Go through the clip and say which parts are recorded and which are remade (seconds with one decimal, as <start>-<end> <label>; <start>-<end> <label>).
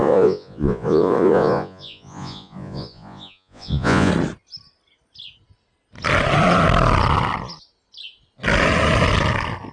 0.0-4.1 remade; 4.1-9.7 recorded